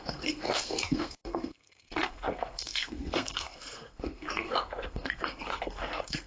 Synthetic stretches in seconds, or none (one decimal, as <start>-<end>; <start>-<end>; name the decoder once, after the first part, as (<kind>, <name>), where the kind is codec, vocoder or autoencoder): 0.0-6.3 (codec, SNAC)

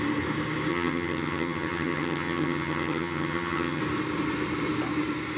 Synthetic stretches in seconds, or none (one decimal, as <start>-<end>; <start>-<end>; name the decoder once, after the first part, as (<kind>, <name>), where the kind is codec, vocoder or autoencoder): 0.7-3.8 (vocoder, HiFi-GAN)

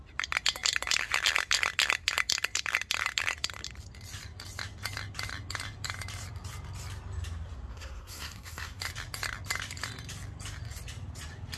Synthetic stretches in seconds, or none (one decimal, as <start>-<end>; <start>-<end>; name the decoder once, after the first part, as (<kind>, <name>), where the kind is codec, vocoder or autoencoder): 7.7-8.8 (codec, SNAC)

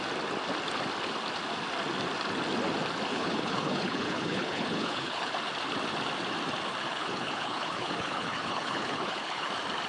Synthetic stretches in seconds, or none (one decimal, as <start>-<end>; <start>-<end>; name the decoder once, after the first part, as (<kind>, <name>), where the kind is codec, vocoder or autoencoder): 3.1-5.3 (codec, HILCodec); 6.8-9.5

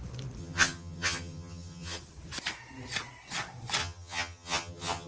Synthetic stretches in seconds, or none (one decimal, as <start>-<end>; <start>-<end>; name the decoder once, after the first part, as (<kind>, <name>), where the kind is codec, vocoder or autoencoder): 0.4-2.0 (vocoder, HiFi-GAN); 3.8-5.1

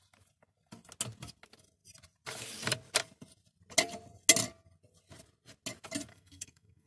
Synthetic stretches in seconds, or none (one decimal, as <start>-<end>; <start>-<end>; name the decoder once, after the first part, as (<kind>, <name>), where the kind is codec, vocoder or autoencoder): 6.1-6.9 (codec, SNAC)

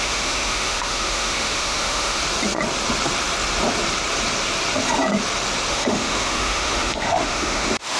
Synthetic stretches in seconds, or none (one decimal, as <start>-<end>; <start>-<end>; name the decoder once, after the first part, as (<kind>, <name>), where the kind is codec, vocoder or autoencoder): 0.0-2.2 (autoencoder, DAC-VAE); 5.7-8.0